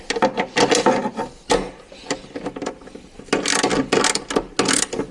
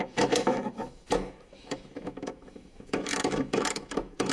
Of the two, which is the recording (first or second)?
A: first